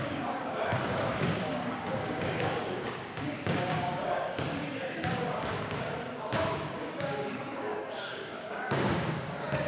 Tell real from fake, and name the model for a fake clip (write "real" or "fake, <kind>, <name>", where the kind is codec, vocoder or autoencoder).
fake, codec, DAC